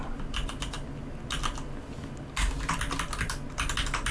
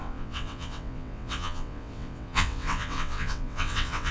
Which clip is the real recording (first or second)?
first